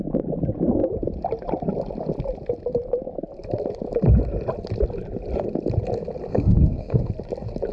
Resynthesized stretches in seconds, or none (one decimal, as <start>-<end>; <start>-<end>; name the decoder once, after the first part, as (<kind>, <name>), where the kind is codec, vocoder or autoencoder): 6.3-7.1 (codec, SNAC)